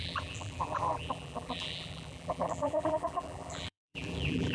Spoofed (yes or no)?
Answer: yes